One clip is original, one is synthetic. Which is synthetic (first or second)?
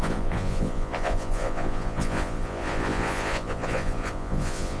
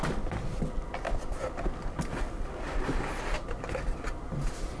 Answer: first